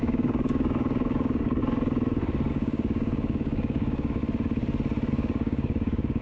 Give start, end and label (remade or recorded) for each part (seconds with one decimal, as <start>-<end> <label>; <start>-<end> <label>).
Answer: 0.0-1.6 remade; 1.6-2.5 recorded; 2.5-4.2 remade; 4.2-5.1 recorded; 5.1-6.2 remade